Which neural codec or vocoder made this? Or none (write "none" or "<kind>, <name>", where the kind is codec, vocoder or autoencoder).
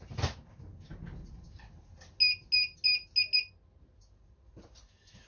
none